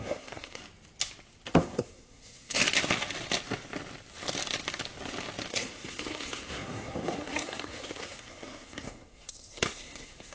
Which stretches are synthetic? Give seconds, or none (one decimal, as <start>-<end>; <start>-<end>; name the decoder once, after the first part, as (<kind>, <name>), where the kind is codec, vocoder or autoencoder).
0.0-0.6 (codec, SNAC); 1.5-2.6; 5.5-10.3